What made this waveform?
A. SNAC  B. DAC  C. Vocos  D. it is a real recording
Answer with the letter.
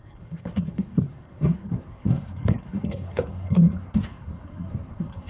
A